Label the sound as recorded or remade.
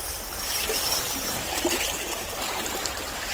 remade